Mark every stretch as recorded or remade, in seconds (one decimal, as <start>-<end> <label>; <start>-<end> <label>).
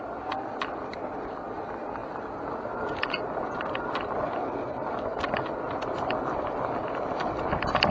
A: 0.0-7.9 recorded